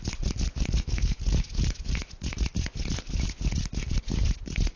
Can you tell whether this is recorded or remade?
recorded